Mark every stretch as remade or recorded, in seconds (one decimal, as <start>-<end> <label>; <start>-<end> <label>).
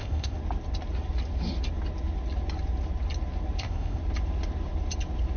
0.0-0.4 remade; 0.4-3.6 recorded; 3.6-4.0 remade; 4.0-5.4 recorded